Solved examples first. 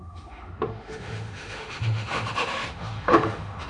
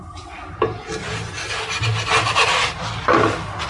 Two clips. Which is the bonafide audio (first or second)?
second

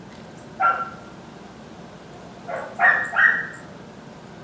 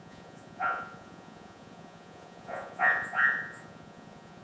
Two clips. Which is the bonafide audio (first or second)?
first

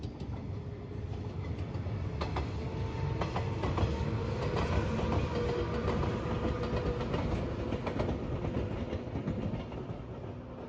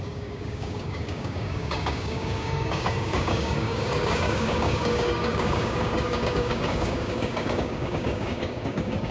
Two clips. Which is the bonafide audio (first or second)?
first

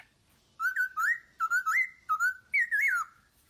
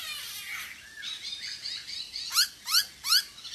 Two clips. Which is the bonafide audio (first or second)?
first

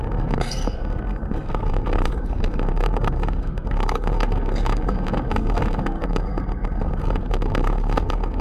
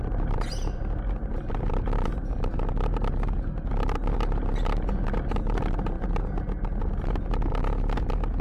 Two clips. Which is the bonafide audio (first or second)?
second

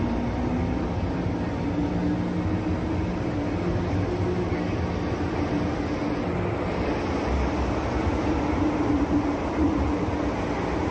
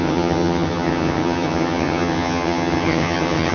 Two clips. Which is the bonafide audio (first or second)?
first